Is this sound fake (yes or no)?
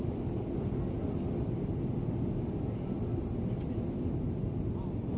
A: no